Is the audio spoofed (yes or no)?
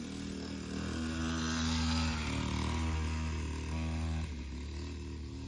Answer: no